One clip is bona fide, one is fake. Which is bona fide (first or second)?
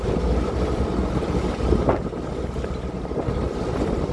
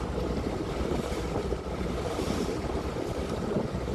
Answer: first